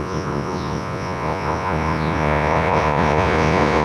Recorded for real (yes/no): no